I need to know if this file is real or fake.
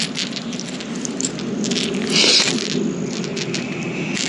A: real